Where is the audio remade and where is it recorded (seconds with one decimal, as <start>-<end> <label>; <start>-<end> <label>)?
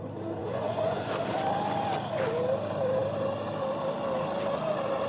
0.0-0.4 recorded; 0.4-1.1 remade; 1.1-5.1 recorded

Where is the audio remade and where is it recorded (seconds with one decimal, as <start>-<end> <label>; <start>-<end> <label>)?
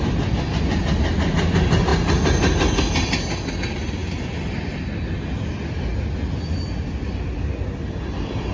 0.0-8.5 recorded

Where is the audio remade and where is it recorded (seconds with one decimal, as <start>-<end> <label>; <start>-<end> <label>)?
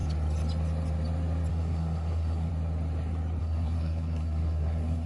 0.0-1.5 recorded; 1.5-2.5 remade; 2.5-3.4 recorded; 3.4-5.1 remade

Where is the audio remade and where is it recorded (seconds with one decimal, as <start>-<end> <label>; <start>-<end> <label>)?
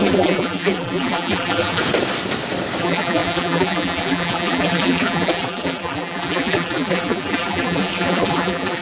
0.0-1.8 remade; 1.8-2.8 recorded; 2.8-8.8 remade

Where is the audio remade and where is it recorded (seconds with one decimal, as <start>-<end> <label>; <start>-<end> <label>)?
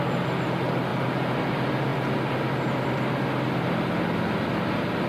0.0-5.1 recorded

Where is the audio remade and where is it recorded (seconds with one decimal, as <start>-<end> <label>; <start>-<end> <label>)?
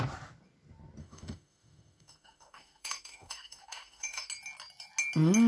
0.0-1.0 recorded; 1.0-4.3 remade; 4.3-5.5 recorded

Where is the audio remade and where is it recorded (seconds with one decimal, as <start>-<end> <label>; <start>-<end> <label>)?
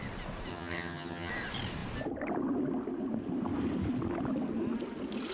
0.0-0.5 recorded; 0.5-1.3 remade; 1.3-5.3 recorded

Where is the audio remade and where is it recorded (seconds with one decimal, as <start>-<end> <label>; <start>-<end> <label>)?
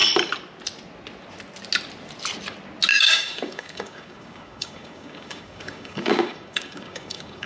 0.0-2.9 recorded; 2.9-7.5 remade